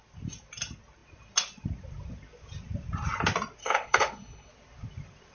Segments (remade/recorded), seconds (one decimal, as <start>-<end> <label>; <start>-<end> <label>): 0.0-3.6 recorded; 3.6-4.5 remade; 4.5-5.3 recorded